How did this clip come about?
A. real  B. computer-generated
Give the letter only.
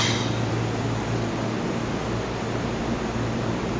A